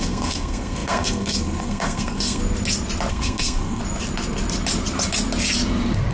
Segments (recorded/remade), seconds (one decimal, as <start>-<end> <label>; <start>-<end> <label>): 0.0-2.4 remade; 2.4-3.1 recorded; 3.1-3.8 remade; 3.8-6.1 recorded